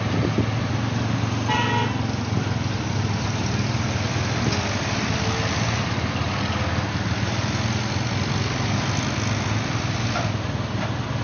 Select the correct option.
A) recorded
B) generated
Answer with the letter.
A